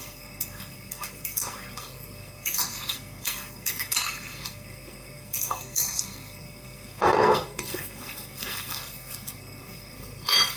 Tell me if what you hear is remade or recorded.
remade